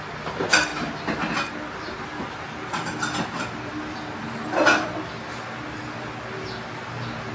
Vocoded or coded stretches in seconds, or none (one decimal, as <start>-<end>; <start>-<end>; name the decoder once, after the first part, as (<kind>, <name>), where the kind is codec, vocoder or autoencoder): none